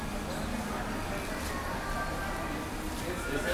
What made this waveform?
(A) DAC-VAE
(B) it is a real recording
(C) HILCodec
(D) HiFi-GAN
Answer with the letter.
B